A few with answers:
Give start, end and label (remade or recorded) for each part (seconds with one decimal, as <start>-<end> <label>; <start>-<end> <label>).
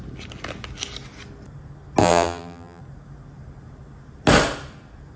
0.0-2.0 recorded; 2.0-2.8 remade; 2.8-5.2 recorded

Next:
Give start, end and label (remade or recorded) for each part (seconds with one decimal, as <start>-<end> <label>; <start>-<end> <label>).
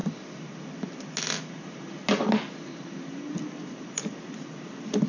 0.0-5.1 recorded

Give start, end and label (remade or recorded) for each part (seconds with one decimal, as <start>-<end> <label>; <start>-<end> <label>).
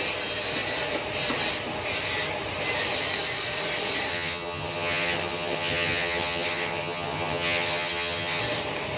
0.0-4.1 recorded; 4.1-8.4 remade; 8.4-9.0 recorded